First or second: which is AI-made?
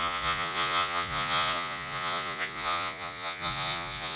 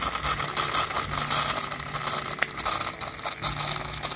first